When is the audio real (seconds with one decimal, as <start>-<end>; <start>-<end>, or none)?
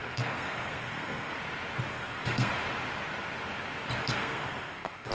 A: 1.4-1.9; 2.5-4.0